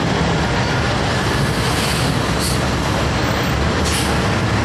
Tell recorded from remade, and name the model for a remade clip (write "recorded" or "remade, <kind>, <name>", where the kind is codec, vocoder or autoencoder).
recorded